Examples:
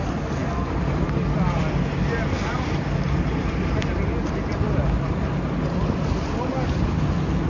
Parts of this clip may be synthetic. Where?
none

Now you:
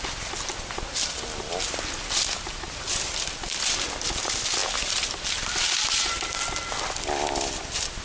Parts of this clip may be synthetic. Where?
none